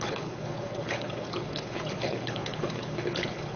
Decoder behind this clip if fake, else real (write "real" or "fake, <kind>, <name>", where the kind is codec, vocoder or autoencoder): fake, codec, HILCodec